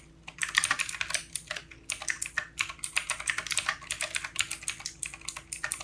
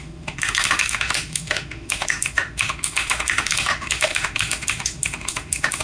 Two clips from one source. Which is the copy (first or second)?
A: second